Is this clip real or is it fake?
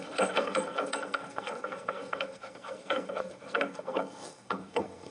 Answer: fake